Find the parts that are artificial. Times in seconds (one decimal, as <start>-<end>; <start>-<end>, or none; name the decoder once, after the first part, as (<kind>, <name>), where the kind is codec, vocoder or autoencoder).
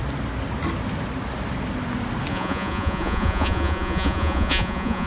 2.3-5.1 (vocoder, Vocos)